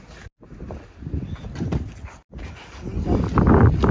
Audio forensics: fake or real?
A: real